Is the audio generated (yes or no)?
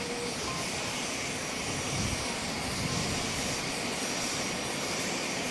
no